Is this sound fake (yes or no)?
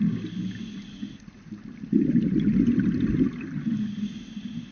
no